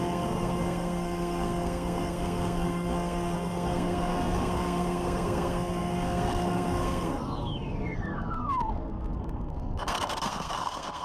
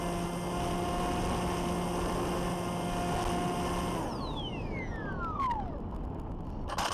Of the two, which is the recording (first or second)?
second